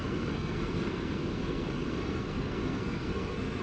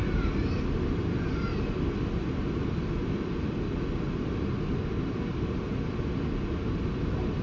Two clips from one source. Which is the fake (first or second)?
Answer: first